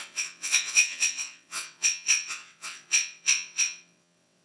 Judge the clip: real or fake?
fake